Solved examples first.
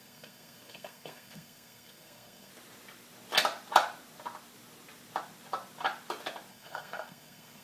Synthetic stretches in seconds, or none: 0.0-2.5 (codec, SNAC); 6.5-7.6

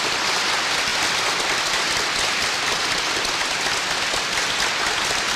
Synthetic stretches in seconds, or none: none

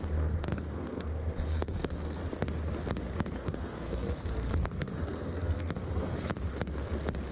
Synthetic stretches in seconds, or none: 0.0-2.2 (codec, SNAC); 3.0-6.3

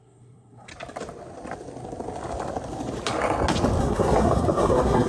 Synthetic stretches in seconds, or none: 0.0-0.7 (codec, SNAC); 3.8-5.1

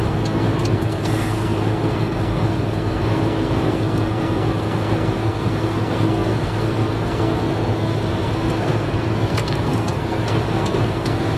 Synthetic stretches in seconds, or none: 0.0-11.4 (codec, SNAC)

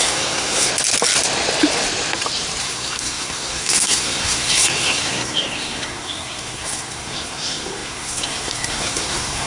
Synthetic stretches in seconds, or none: 0.0-0.7 (codec, SNAC); 2.6-9.5

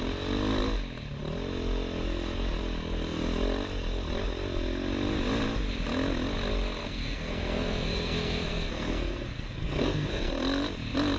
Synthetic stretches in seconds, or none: 6.8-10.3 (codec, SNAC)